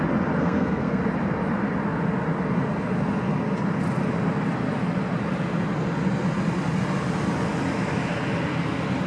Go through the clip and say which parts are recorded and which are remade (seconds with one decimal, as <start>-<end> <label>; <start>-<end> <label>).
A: 0.0-0.4 recorded; 0.4-1.0 remade; 1.0-9.1 recorded